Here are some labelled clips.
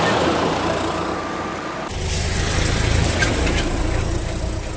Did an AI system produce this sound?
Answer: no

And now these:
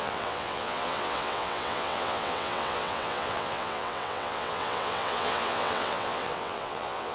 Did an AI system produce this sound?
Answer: yes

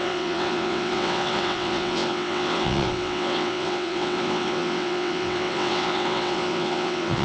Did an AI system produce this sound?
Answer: yes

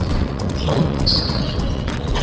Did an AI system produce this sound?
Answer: yes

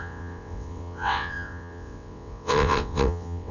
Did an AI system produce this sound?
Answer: yes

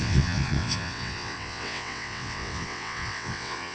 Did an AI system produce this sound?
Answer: yes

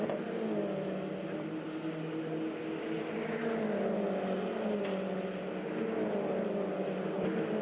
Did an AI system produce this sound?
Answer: no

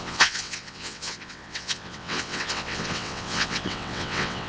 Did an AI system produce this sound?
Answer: yes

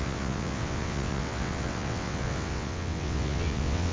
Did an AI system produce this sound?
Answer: yes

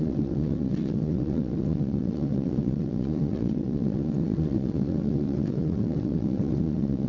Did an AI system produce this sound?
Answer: yes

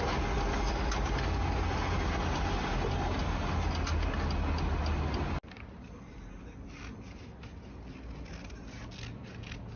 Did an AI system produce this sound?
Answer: no